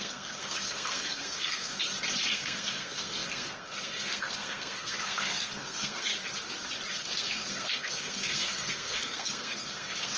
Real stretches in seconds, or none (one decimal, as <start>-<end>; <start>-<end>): 1.8-2.3; 6.1-6.9